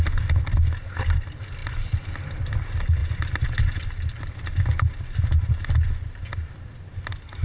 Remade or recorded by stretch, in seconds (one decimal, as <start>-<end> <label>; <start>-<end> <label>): 0.0-7.4 recorded